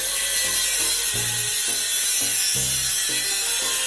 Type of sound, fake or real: real